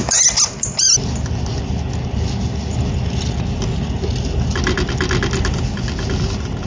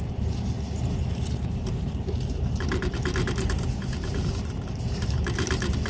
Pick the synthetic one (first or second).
second